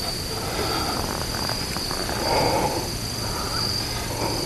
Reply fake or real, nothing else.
real